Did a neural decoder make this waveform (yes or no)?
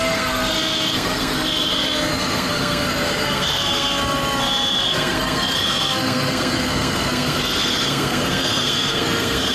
yes